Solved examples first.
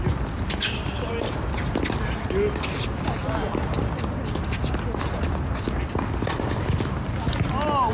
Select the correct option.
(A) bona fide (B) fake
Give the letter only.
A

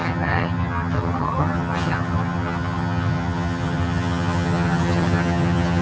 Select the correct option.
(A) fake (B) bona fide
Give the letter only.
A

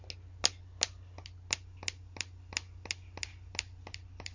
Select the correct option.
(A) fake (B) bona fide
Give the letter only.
B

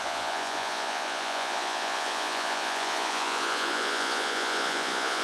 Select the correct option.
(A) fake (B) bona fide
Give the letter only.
A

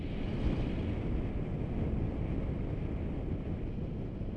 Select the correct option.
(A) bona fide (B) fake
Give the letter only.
A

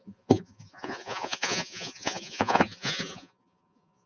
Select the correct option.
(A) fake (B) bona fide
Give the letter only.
A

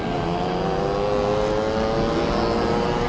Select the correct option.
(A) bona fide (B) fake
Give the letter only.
A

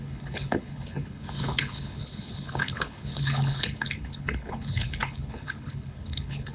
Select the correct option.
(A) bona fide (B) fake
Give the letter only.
B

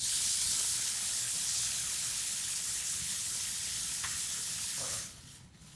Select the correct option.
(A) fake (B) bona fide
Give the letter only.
A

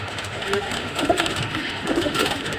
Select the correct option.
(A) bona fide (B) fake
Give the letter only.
B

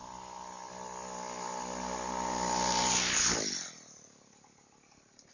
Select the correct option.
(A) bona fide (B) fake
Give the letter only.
A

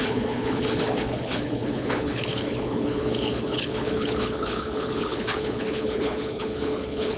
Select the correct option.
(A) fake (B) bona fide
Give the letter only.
A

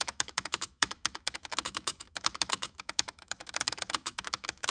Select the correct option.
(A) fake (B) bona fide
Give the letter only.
A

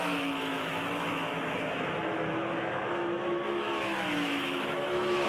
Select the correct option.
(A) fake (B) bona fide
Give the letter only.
A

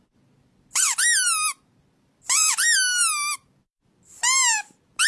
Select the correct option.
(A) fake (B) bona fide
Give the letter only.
B